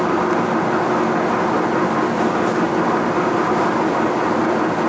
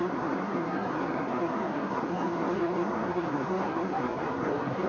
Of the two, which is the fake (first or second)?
second